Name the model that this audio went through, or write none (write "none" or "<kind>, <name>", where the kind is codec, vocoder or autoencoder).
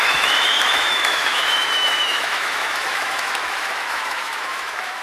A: autoencoder, DAC-VAE